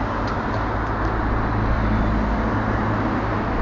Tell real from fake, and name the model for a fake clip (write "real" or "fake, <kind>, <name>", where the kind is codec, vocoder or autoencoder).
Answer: real